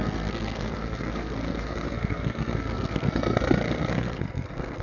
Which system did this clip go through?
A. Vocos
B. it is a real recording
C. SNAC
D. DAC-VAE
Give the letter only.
C